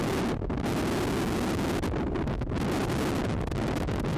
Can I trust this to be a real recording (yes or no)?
yes